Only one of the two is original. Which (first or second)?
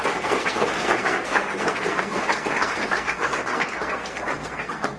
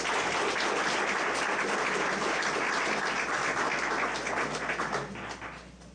second